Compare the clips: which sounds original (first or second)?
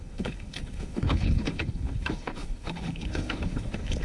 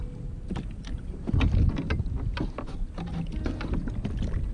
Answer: second